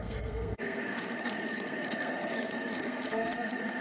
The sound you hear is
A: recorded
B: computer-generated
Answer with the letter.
B